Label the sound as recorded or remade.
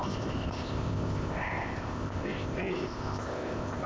remade